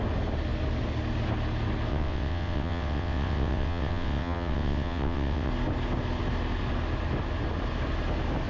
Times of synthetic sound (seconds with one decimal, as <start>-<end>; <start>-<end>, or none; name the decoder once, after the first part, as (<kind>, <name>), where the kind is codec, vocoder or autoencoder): 1.9-5.5 (vocoder, WaveNeXt)